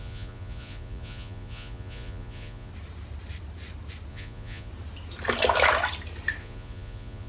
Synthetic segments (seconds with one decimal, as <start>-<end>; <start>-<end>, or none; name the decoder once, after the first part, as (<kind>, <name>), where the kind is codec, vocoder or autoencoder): 0.0-2.7 (vocoder, Vocos); 4.1-4.7; 6.4-7.3

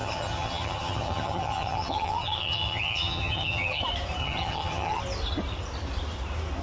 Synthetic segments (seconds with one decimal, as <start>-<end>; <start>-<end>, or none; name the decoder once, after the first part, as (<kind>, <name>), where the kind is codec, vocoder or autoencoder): 0.0-3.8 (vocoder, HiFi-GAN); 4.2-5.0

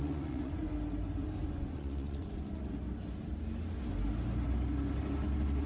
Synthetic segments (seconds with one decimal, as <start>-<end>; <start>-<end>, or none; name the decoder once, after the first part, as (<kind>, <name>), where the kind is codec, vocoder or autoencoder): 0.0-0.7 (vocoder, Vocos); 1.4-2.6

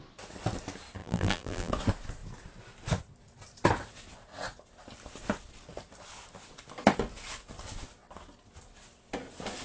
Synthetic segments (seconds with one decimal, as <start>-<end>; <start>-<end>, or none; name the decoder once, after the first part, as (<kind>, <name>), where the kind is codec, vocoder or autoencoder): 1.0-1.7 (vocoder, BigVGAN v2)

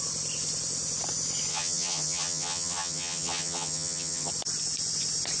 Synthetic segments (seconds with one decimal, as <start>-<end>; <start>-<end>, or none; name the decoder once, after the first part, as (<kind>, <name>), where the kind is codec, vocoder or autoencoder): 1.5-4.3 (vocoder, HiFi-GAN)

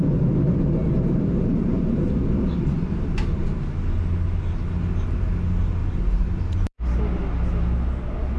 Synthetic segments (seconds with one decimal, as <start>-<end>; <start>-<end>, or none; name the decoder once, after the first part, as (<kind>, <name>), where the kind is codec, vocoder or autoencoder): 5.8-6.8 (vocoder, BigVGAN v2)

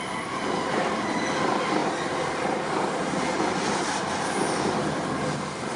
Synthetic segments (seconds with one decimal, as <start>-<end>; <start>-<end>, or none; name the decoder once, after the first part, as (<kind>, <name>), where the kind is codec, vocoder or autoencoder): none